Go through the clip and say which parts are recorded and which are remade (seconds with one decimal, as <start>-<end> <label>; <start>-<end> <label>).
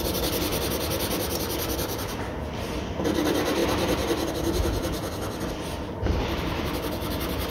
0.0-7.5 recorded